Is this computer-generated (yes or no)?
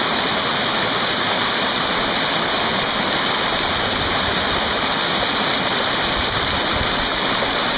no